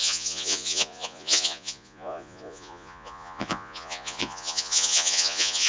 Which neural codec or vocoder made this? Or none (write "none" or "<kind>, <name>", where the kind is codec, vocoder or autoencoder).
vocoder, Vocos